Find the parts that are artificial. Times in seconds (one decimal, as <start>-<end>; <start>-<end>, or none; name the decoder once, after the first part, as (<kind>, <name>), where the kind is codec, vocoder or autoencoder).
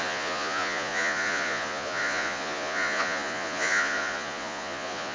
0.0-5.1 (vocoder, Vocos)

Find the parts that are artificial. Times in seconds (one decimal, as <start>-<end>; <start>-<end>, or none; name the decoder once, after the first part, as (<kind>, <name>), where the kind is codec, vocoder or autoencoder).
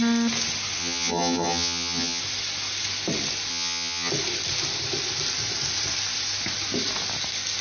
0.8-2.2 (vocoder, HiFi-GAN); 3.5-4.1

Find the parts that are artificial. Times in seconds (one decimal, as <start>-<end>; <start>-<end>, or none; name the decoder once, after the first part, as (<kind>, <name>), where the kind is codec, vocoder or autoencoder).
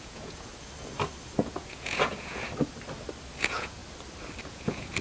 0.0-0.5 (vocoder, Vocos); 1.4-2.4; 3.4-3.8; 4.5-5.0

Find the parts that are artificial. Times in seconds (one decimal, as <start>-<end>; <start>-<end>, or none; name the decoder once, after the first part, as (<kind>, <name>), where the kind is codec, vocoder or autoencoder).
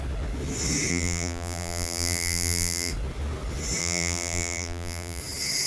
0.9-2.9 (vocoder, BigVGAN v2); 3.8-5.2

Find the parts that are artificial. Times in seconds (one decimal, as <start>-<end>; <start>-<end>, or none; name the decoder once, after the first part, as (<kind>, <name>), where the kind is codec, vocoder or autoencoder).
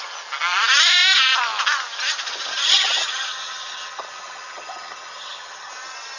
2.6-5.7 (vocoder, HiFi-GAN)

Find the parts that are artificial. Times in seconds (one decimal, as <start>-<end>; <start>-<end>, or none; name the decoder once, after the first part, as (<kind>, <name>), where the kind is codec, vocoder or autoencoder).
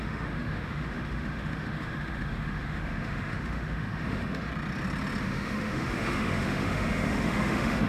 0.0-4.5 (autoencoder, DAC-VAE); 5.2-7.9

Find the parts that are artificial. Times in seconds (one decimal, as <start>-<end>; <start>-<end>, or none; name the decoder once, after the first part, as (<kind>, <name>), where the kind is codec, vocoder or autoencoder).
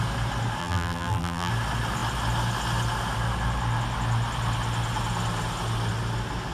0.6-1.5 (vocoder, BigVGAN v2)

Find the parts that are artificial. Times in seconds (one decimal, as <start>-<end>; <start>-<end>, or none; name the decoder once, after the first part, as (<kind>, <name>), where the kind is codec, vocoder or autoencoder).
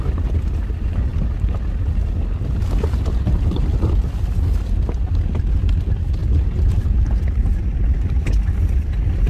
none